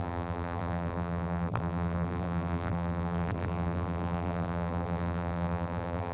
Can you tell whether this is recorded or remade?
remade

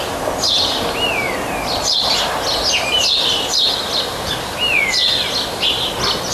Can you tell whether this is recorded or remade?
recorded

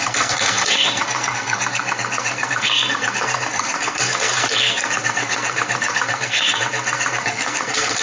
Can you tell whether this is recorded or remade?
remade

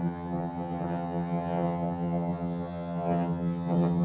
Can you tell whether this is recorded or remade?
remade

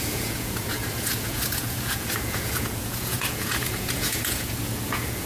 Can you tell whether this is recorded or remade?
remade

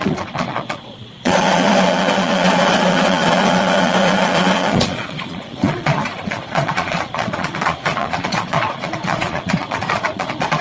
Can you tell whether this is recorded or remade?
remade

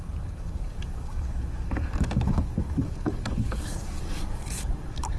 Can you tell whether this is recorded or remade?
remade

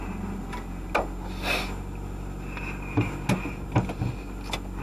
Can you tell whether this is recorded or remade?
recorded